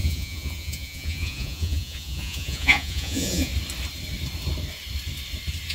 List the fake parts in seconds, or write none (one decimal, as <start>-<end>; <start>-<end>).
0.0-3.5